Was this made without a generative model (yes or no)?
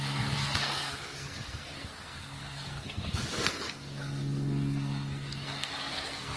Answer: no